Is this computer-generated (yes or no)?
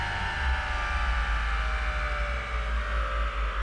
no